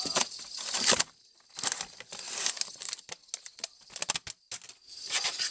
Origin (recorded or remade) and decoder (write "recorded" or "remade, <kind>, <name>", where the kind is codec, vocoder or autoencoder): recorded